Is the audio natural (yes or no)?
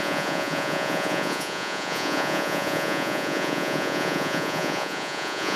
no